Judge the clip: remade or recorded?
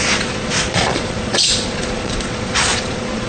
remade